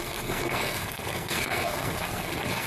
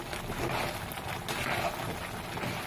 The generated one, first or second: first